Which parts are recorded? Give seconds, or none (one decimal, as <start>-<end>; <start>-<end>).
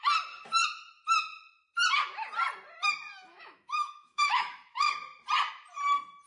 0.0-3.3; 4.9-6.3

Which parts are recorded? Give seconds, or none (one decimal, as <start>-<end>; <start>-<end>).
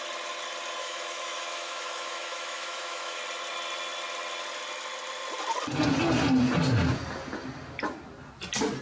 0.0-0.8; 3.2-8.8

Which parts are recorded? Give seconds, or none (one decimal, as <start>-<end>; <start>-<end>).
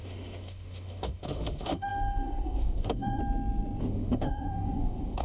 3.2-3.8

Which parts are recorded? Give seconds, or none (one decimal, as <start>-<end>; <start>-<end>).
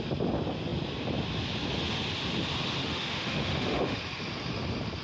0.0-2.8; 4.0-5.0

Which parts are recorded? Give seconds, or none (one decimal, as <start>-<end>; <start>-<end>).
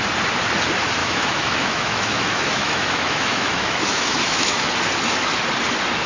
0.0-1.0; 4.7-6.1